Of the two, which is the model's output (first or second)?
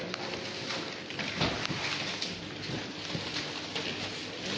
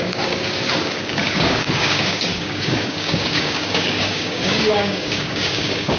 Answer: second